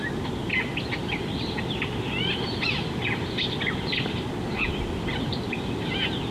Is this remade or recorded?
recorded